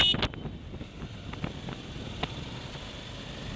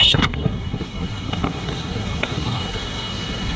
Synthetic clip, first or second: second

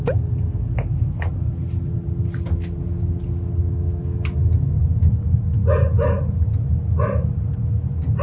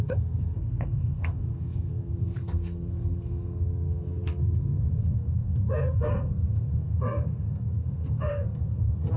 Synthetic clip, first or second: second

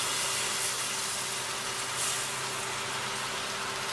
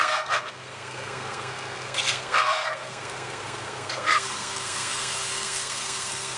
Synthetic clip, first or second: second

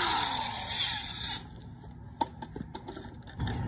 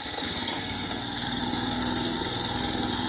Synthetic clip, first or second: second